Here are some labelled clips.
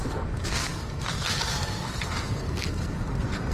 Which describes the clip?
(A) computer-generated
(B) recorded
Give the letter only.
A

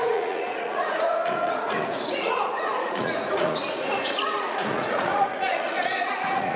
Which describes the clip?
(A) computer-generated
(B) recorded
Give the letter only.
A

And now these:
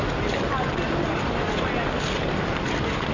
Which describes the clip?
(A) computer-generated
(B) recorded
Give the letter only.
B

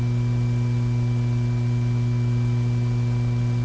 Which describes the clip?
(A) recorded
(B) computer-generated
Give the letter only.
A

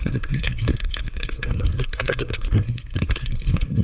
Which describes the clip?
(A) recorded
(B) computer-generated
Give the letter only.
B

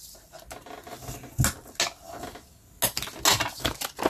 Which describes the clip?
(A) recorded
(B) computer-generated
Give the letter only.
A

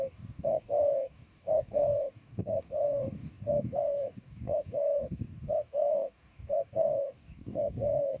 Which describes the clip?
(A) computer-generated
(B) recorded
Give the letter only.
A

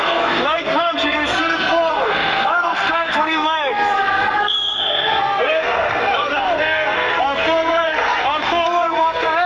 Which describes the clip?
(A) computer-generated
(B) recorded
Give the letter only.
A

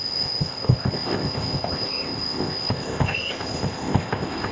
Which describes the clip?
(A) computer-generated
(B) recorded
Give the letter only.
A